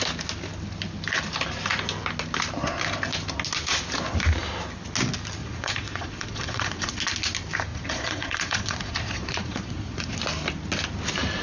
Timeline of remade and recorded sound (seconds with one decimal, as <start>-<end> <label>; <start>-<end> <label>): 0.0-5.4 recorded; 5.4-7.0 remade; 7.0-7.7 recorded; 7.7-10.2 remade; 10.2-11.4 recorded